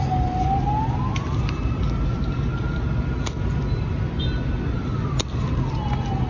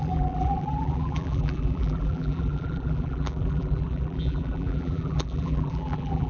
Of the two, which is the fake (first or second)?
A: second